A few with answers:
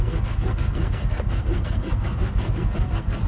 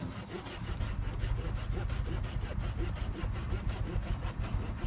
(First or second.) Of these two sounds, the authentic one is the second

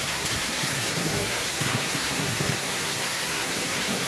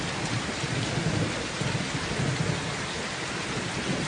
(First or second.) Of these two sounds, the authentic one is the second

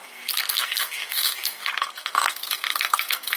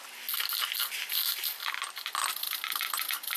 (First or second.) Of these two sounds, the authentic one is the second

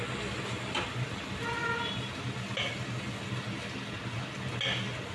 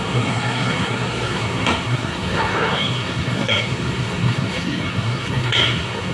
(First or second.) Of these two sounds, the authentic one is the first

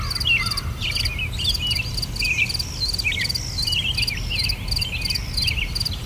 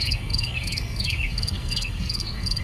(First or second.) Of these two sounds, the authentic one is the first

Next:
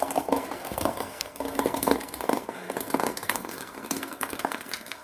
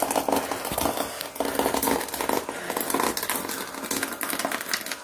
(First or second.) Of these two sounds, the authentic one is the second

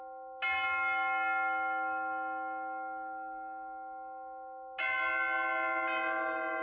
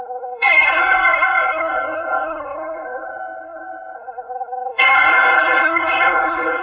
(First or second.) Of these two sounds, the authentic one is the first